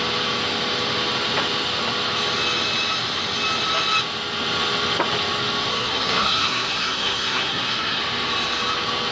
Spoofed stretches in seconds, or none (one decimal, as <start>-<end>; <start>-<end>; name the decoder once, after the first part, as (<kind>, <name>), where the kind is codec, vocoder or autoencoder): 5.7-8.0 (codec, SNAC)